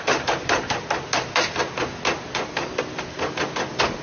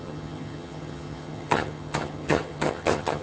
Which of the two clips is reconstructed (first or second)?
second